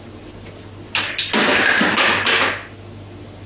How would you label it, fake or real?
real